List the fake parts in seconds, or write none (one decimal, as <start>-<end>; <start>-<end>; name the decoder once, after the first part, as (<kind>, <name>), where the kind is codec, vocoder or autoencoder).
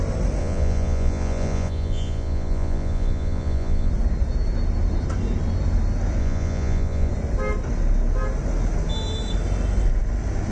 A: 0.4-3.9 (vocoder, Vocos); 6.2-7.1